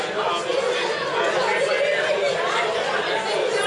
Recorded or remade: recorded